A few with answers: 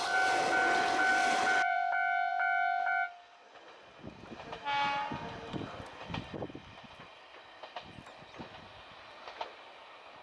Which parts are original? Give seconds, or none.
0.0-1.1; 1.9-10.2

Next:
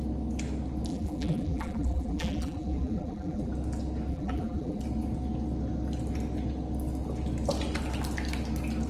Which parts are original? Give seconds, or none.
0.0-0.9; 3.5-4.1; 4.8-8.9

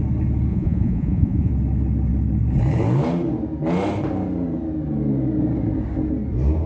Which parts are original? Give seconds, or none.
0.0-0.5; 1.5-6.7

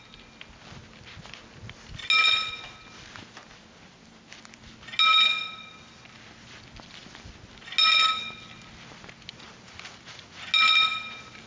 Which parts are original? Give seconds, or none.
0.0-11.5